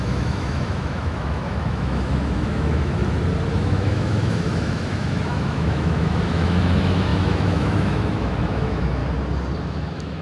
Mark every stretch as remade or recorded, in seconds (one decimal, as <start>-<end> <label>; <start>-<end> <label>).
0.0-3.0 remade; 3.0-3.5 recorded; 3.5-9.0 remade; 9.0-9.6 recorded; 9.6-10.2 remade